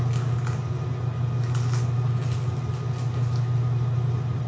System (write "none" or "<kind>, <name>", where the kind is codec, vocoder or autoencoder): none